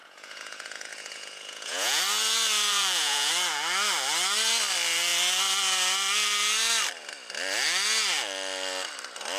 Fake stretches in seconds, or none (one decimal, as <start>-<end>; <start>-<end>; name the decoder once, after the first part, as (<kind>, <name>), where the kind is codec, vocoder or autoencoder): 0.0-2.0 (vocoder, Vocos); 2.7-3.3